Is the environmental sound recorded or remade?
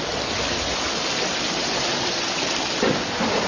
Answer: recorded